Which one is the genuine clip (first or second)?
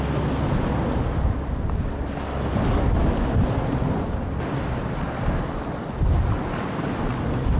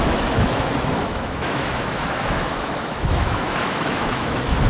first